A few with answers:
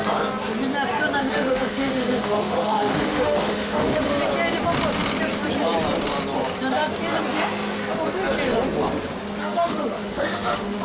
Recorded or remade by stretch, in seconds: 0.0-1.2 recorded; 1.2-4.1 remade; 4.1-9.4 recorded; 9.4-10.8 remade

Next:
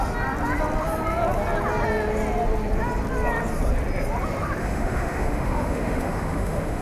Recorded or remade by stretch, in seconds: 0.0-4.6 recorded; 4.6-6.8 remade

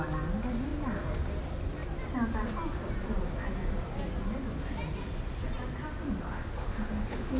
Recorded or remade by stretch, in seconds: 0.0-6.6 recorded; 6.6-7.4 remade

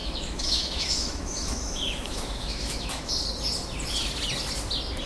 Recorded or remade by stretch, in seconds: 0.0-3.1 remade; 3.1-5.1 recorded

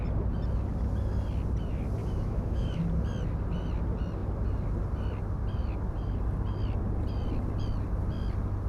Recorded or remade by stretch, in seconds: 0.0-2.0 recorded; 2.0-2.8 remade; 2.8-8.7 recorded

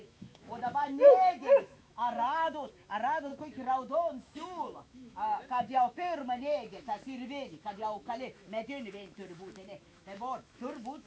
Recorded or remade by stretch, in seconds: 0.0-11.1 remade

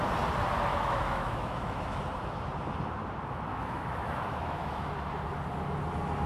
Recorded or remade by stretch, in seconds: 0.0-0.7 recorded; 0.7-2.0 remade; 2.0-3.5 recorded; 3.5-4.9 remade; 4.9-6.3 recorded

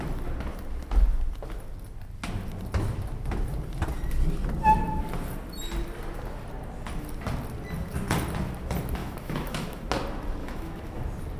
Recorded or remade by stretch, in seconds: 0.0-9.0 recorded; 9.0-9.8 remade; 9.8-10.4 recorded; 10.4-11.0 remade; 11.0-11.4 recorded